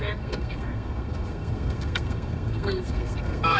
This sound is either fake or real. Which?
fake